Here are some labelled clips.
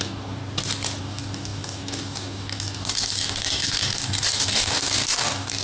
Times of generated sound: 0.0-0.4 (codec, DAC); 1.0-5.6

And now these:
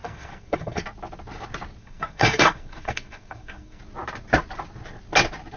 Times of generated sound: 0.0-0.8 (codec, SNAC); 1.8-3.8

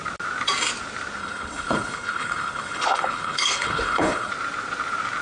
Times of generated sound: 1.2-4.3 (codec, HILCodec)

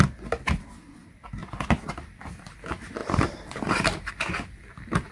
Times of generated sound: 1.4-1.9 (vocoder, BigVGAN v2); 3.0-4.1

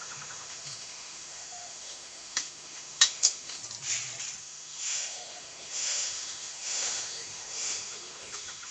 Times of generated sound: 0.0-3.6 (autoencoder, DAC-VAE); 4.4-8.7

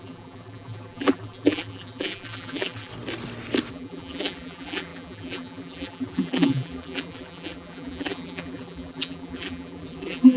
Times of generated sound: 0.0-2.9 (vocoder, BigVGAN v2); 3.7-10.4

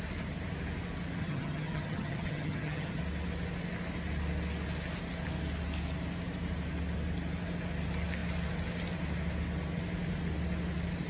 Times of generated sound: 1.2-3.0 (vocoder, HiFi-GAN)

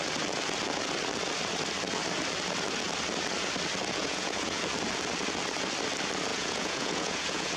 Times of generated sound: 4.0-4.6 (vocoder, Vocos); 6.3-7.6